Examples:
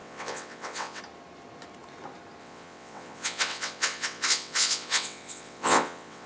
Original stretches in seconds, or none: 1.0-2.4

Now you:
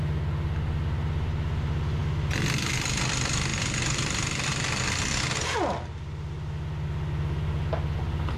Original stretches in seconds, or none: 0.0-3.5; 4.7-8.4

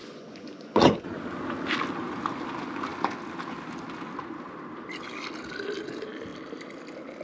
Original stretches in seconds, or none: 1.2-7.2